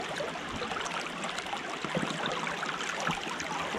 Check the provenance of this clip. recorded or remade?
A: recorded